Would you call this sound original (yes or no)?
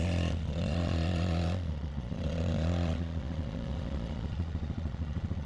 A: no